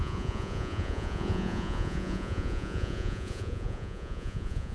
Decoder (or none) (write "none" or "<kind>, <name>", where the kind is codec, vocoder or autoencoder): vocoder, Vocos